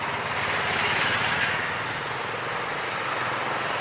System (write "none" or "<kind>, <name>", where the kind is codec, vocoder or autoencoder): none